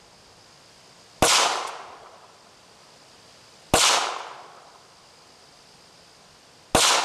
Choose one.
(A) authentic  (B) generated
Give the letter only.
A